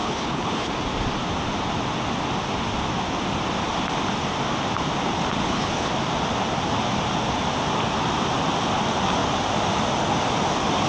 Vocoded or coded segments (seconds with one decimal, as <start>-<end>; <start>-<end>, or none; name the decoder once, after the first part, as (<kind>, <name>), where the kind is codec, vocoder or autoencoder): 0.0-0.7 (codec, HILCodec); 5.4-5.9